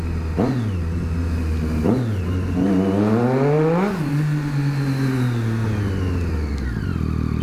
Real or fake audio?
real